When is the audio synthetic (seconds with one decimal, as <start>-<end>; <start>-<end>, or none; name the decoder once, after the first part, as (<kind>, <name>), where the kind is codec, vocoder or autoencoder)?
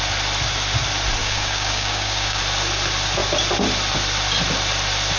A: 1.2-2.4 (codec, DAC)